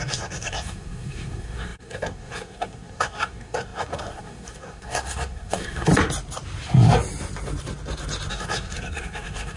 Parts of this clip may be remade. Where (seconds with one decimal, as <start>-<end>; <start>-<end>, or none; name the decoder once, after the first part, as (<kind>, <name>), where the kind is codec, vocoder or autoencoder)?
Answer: 0.0-5.9 (codec, SNAC); 8.3-9.6